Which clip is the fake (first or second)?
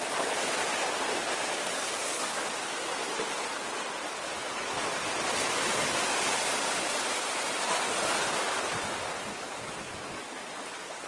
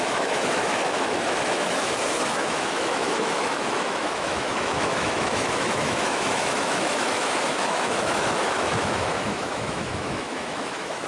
second